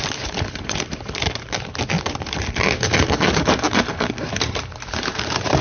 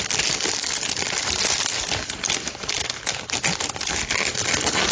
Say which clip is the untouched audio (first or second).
second